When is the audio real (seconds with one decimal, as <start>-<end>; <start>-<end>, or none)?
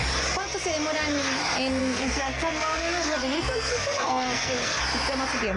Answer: 0.0-1.8; 4.8-5.6